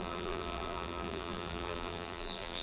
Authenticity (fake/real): fake